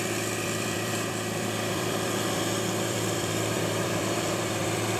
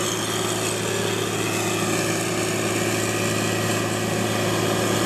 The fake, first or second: first